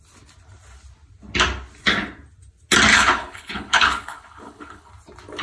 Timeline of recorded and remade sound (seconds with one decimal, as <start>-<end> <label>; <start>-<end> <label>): 0.0-2.9 recorded; 2.9-4.9 remade; 4.9-5.4 recorded